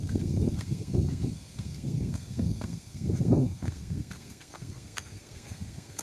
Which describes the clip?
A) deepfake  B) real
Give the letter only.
A